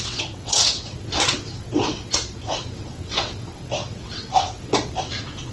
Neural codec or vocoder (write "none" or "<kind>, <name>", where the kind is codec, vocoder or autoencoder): vocoder, WaveNeXt